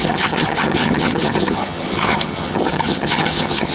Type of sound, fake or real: fake